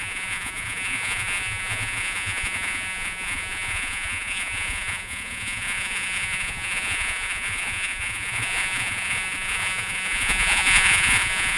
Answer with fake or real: fake